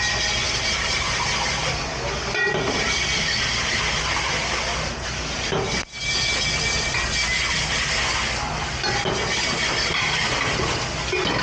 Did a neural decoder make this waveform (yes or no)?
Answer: no